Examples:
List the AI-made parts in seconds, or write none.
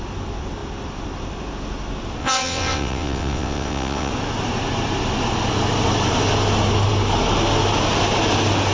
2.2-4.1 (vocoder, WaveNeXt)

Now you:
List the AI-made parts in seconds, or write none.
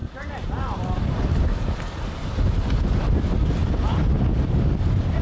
none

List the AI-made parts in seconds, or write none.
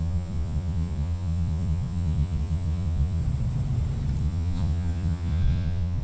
0.0-3.2 (vocoder, Vocos); 4.2-6.0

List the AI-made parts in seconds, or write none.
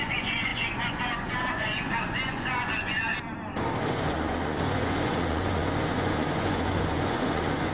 0.0-3.1 (vocoder, Vocos); 3.9-7.7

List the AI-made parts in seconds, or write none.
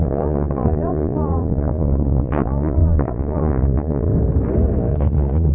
0.0-4.1 (vocoder, Vocos); 4.9-5.5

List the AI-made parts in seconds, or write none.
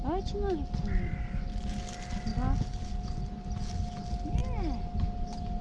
none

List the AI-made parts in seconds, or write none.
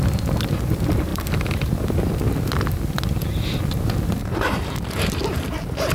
1.1-2.1 (vocoder, BigVGAN v2); 4.2-5.9